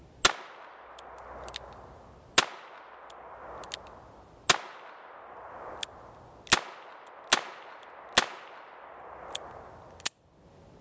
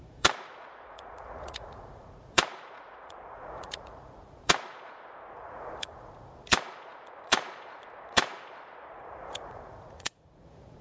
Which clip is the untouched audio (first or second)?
first